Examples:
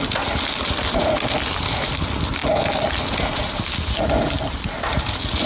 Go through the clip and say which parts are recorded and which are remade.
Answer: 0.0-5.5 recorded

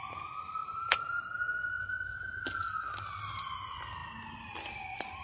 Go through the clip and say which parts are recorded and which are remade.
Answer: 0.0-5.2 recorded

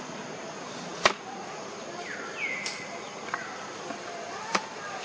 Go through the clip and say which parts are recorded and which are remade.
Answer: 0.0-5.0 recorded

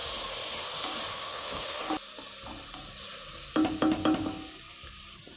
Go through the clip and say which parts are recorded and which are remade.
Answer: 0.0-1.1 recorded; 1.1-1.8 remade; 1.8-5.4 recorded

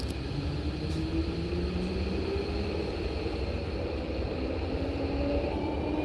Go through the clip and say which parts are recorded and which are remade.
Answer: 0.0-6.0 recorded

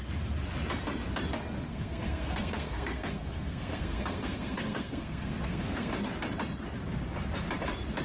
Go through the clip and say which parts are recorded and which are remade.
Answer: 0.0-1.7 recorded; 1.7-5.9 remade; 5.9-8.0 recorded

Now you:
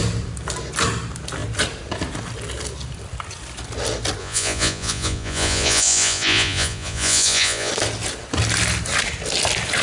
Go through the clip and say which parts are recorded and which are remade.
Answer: 0.0-4.2 recorded; 4.2-7.7 remade; 7.7-9.8 recorded

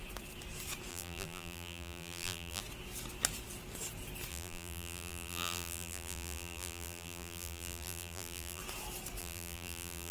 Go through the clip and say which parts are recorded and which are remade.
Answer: 0.0-0.9 recorded; 0.9-2.6 remade; 2.6-4.3 recorded; 4.3-8.6 remade; 8.6-9.2 recorded; 9.2-10.1 remade